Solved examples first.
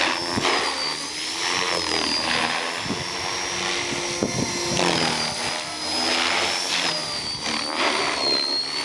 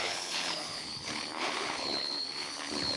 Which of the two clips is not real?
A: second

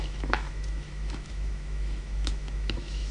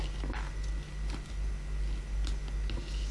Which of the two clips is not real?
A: first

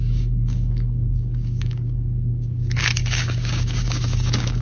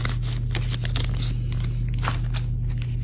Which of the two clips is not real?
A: first